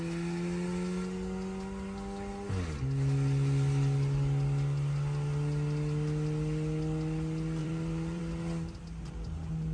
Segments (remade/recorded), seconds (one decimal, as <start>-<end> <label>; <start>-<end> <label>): 0.0-7.6 recorded; 7.6-8.2 remade; 8.2-9.7 recorded